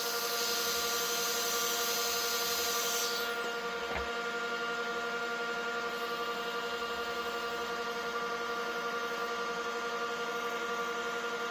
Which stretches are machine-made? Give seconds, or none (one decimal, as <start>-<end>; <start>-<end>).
none

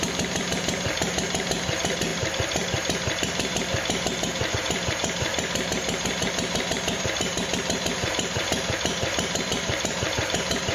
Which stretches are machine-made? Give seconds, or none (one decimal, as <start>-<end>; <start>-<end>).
0.0-10.7

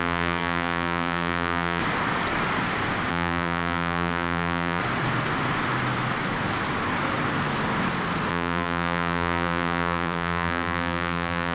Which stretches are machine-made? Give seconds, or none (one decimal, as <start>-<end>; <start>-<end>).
0.0-1.8; 3.1-4.8; 8.3-11.5